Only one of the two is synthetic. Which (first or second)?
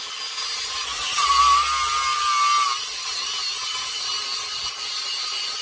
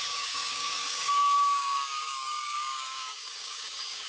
second